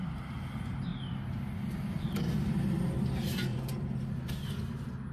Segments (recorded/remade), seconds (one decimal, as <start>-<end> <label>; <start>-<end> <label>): 0.0-3.5 recorded; 3.5-4.3 remade; 4.3-5.1 recorded